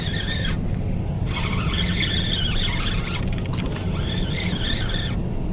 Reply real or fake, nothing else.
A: real